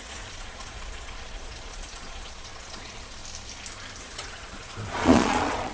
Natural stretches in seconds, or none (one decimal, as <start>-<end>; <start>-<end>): 3.2-4.0